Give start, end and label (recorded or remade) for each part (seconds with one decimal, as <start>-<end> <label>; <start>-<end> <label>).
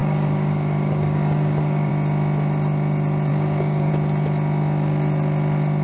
0.0-1.9 remade; 1.9-3.3 recorded; 3.3-3.9 remade; 3.9-5.8 recorded